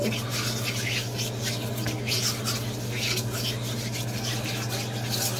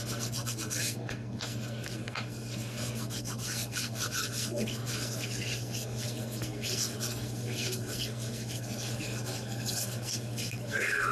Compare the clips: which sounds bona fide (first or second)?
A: first